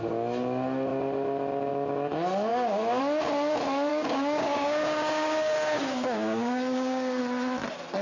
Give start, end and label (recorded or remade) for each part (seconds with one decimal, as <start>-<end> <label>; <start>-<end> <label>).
0.0-2.5 recorded; 2.5-3.0 remade; 3.0-3.9 recorded; 3.9-7.2 remade; 7.2-8.0 recorded